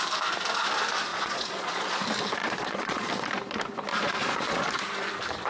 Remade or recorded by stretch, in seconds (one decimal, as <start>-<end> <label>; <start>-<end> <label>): 0.0-1.1 recorded; 1.1-2.0 remade; 2.0-2.4 recorded; 2.4-3.1 remade; 3.1-3.9 recorded; 3.9-4.6 remade; 4.6-5.5 recorded